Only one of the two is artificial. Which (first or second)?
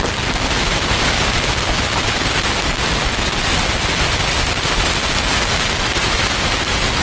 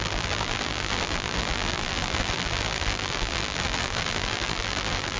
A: second